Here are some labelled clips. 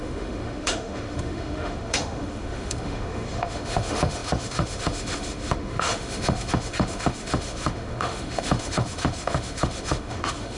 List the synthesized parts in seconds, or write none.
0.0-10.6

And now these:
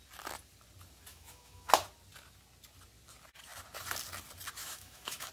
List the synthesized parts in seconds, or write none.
1.1-1.7; 4.6-5.3

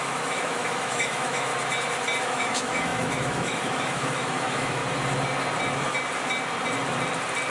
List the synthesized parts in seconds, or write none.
0.0-1.5; 2.2-4.8

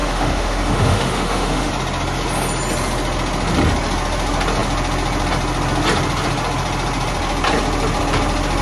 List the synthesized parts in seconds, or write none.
0.0-1.7

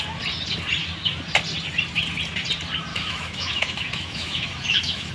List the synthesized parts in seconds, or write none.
2.9-5.1

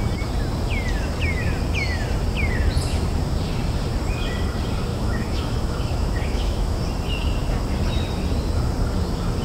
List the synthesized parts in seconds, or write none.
4.9-6.8